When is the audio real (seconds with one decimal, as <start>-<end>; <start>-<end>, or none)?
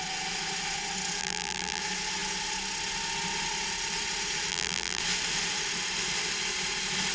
0.0-1.2; 1.8-4.5; 5.0-7.1